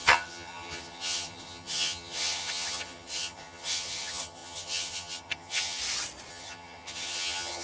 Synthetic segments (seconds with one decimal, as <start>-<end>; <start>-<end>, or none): 0.0-5.8; 6.3-7.6